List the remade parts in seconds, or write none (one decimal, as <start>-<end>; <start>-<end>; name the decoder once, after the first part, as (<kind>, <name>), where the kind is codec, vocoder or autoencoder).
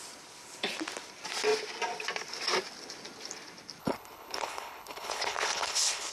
3.8-6.1 (codec, HILCodec)